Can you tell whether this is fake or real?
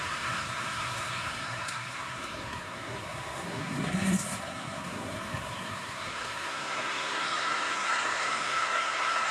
fake